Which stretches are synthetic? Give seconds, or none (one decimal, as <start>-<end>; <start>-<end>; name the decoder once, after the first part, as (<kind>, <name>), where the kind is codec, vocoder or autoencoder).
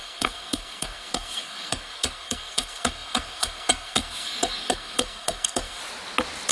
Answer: 0.0-5.8 (codec, SNAC)